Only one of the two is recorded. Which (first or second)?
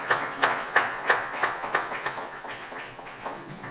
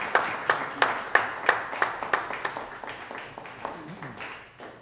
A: second